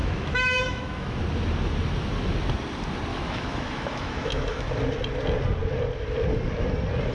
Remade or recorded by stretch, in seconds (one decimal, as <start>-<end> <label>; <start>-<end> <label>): 0.0-1.2 remade; 1.2-3.1 recorded; 3.1-4.7 remade; 4.7-7.1 recorded